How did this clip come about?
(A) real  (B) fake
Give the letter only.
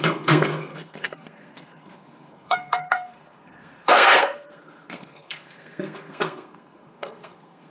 B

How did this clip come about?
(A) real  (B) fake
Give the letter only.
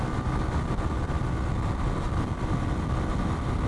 A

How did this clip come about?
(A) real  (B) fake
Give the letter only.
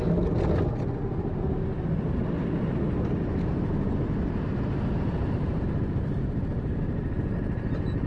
A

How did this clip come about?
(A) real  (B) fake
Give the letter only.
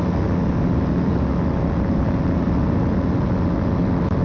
A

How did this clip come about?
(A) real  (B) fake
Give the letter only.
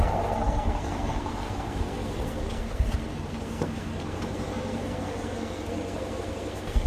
B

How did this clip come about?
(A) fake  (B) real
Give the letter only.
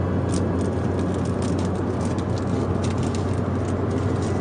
B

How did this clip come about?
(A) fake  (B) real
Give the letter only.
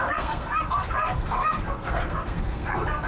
A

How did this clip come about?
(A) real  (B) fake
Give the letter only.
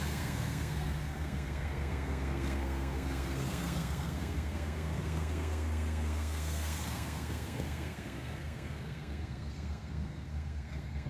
B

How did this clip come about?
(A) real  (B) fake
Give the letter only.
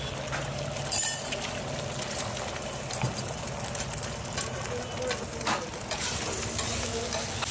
A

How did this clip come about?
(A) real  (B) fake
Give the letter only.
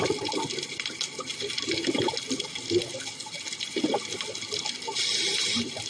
A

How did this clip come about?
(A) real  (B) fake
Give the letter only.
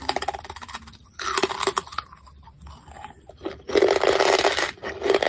A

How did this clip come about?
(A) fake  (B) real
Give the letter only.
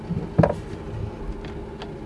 B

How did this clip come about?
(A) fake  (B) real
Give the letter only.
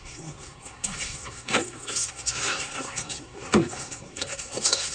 A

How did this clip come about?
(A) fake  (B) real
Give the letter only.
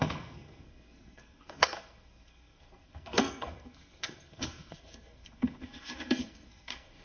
A